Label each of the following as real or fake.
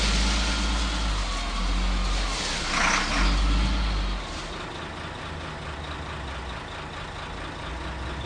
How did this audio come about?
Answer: real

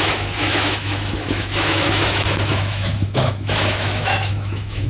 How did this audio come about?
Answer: fake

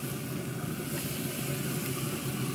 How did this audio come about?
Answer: real